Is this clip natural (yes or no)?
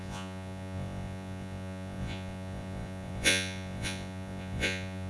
no